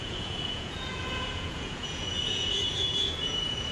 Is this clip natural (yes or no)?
no